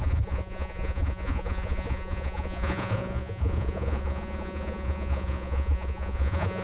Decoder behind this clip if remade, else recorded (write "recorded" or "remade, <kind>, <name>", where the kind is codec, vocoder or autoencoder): remade, vocoder, Vocos